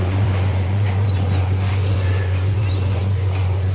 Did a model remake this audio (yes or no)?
yes